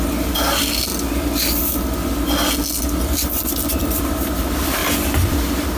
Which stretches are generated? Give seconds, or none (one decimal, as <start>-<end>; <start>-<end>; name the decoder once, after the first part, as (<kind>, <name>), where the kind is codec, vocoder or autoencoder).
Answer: 0.0-0.9 (vocoder, BigVGAN v2); 3.5-4.8; 5.3-5.8